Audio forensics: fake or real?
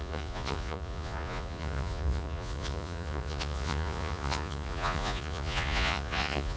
fake